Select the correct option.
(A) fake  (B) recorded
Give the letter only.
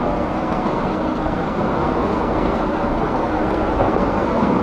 A